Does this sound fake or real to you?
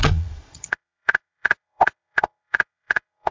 fake